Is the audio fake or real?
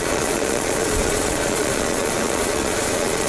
fake